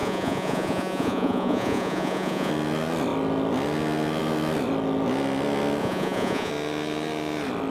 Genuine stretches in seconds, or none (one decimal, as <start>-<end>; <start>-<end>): 2.5-5.8; 6.5-7.7